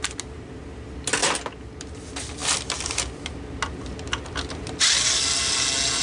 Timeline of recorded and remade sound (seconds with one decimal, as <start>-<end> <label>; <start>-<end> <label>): 0.0-6.0 recorded